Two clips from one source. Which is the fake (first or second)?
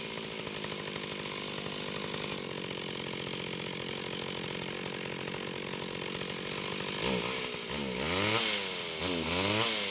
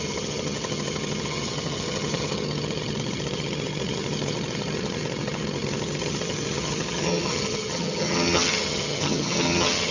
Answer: second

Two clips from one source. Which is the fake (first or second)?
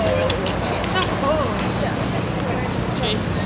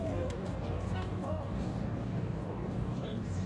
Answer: second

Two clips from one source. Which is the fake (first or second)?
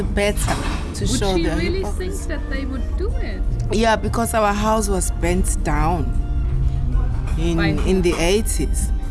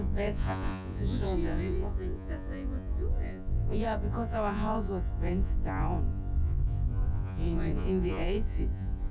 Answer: second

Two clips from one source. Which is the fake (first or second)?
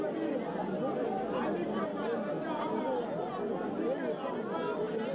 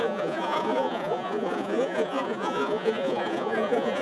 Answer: second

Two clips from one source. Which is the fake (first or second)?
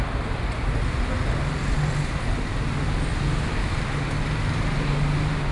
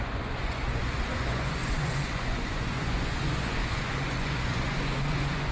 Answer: second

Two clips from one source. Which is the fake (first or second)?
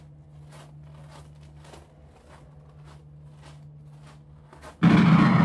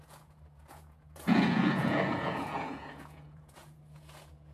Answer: second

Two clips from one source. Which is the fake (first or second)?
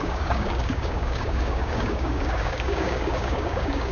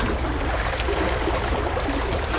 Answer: first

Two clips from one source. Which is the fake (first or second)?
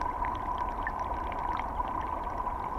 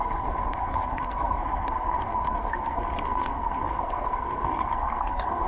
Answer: second